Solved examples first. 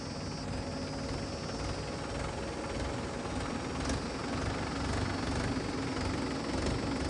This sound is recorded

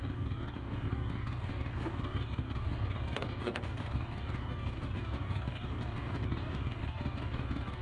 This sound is remade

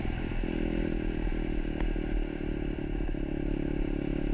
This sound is recorded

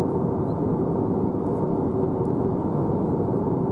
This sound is recorded